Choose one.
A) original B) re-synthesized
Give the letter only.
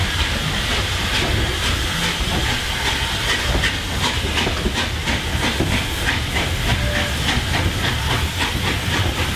A